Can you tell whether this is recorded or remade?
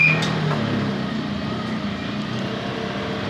recorded